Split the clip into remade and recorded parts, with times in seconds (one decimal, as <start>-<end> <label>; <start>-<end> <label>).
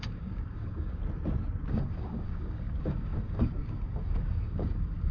0.0-1.0 remade; 1.0-1.7 recorded; 1.7-5.1 remade